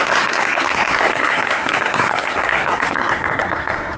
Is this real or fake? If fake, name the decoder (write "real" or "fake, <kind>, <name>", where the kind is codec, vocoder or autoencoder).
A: fake, codec, SNAC